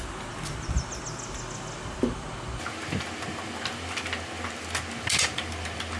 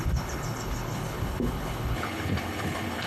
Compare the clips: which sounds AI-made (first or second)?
second